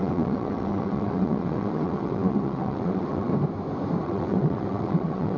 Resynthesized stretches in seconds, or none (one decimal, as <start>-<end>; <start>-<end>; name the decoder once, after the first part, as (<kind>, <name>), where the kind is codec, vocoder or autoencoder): 0.0-3.3 (vocoder, WaveNeXt); 4.0-5.4